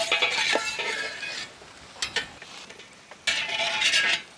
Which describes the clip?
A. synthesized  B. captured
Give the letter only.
B